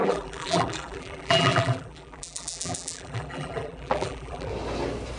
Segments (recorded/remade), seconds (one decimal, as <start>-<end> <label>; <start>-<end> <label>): 0.0-4.5 remade; 4.5-5.2 recorded